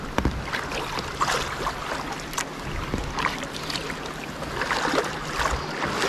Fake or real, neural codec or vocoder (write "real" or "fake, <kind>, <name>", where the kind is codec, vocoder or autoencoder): real